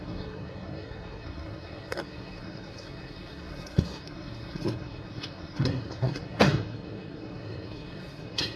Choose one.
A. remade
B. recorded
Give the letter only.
A